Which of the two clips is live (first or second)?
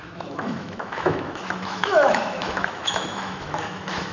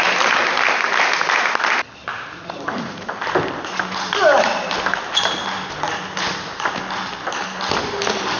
second